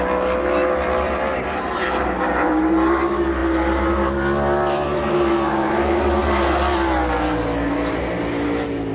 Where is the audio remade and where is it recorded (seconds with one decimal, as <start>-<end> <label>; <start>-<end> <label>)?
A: 0.0-8.9 recorded